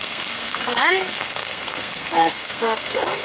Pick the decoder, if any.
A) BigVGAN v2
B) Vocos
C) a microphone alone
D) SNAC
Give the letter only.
D